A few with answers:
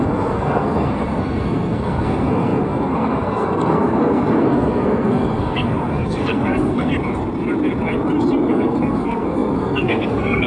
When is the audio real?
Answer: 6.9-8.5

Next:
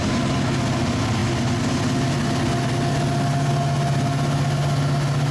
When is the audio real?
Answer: 0.0-5.3

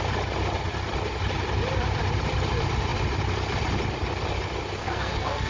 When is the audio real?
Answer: 0.0-4.8

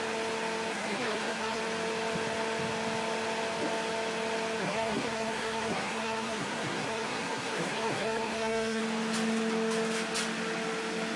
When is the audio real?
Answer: 0.0-0.7; 1.6-4.6; 8.8-11.2

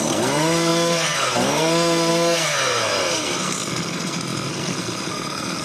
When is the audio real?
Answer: none

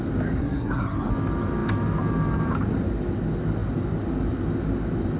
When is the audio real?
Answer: 0.0-0.4; 1.1-5.2

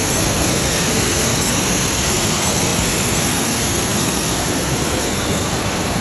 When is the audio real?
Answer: none